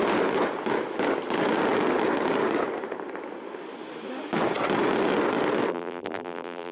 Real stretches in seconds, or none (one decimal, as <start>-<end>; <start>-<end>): 0.0-5.7